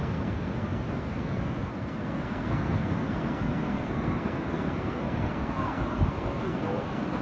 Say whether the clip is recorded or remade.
remade